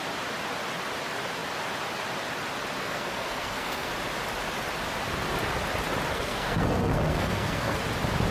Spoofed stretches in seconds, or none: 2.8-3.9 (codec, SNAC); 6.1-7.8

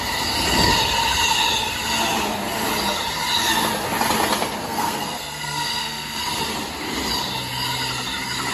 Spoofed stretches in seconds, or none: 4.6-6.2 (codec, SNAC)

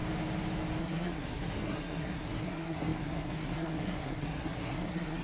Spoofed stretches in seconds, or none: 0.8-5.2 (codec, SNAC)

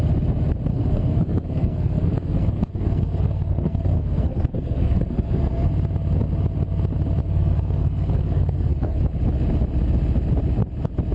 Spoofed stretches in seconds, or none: 0.7-5.7 (codec, SNAC); 7.2-9.0